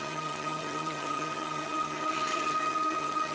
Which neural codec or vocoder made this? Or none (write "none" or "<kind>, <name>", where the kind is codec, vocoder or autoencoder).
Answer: vocoder, HiFi-GAN